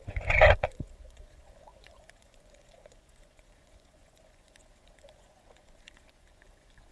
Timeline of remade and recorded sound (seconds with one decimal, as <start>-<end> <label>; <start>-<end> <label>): 0.0-6.9 remade

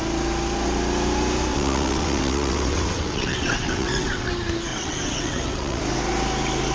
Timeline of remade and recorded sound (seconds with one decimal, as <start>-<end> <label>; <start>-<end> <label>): 0.0-1.5 recorded; 1.5-4.3 remade; 4.3-4.7 recorded; 4.7-5.8 remade; 5.8-6.7 recorded

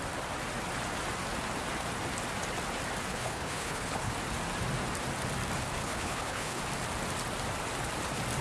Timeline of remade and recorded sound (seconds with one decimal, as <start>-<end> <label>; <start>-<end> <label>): 0.0-3.1 recorded; 3.1-4.1 remade; 4.1-5.8 recorded; 5.8-6.6 remade; 6.6-8.4 recorded

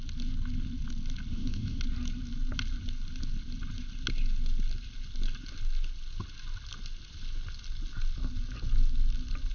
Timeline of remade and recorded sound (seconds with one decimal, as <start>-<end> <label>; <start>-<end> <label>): 0.0-1.3 recorded; 1.3-1.8 remade; 1.8-9.5 recorded

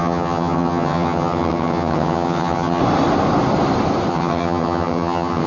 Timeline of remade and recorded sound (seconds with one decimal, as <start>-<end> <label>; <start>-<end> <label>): 0.0-2.8 remade; 2.8-4.1 recorded; 4.1-5.5 remade